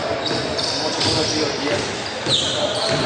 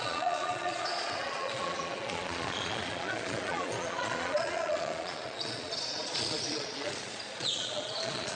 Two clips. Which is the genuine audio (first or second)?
first